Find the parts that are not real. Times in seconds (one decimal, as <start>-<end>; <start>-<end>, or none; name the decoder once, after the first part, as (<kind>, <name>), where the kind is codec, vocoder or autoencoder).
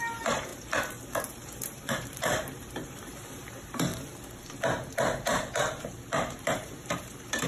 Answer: 0.0-3.9 (vocoder, BigVGAN v2); 5.8-7.5